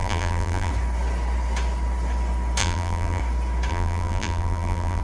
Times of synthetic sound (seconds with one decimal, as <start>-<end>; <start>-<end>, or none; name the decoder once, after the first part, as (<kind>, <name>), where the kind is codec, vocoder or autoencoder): 0.0-0.7 (vocoder, BigVGAN v2); 2.6-3.2; 3.7-5.0